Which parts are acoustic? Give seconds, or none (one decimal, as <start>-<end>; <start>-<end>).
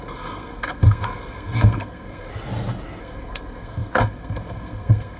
2.3-3.0